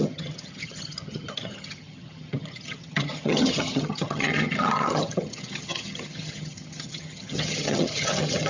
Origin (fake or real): fake